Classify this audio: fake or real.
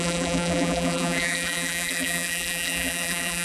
fake